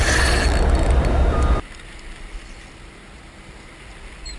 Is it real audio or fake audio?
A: real